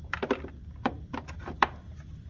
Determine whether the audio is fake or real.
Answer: real